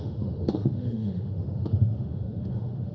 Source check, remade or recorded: remade